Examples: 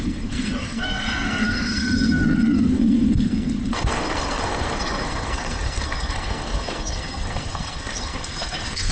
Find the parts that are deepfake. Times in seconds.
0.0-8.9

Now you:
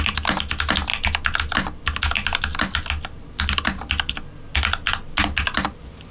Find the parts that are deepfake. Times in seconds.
none

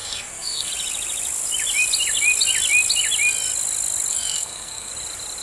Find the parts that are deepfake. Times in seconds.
0.0-0.7; 4.1-4.9

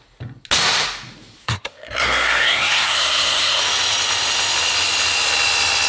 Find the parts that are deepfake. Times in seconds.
1.4-3.6